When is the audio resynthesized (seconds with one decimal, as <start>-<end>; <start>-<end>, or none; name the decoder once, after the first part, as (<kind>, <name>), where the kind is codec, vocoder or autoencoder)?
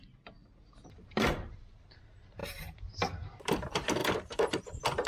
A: 0.4-2.0 (vocoder, BigVGAN v2); 2.4-3.5; 4.0-4.6